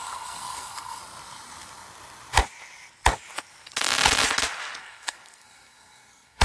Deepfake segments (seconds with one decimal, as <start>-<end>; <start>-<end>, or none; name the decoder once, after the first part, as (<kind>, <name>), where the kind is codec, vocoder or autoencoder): 0.0-1.0 (codec, SNAC); 4.8-6.4

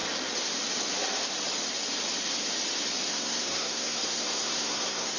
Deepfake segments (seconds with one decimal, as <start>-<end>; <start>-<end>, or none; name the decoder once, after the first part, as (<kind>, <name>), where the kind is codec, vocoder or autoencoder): 3.1-5.2 (codec, SNAC)